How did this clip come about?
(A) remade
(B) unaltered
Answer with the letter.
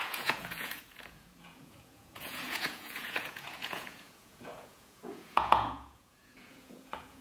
A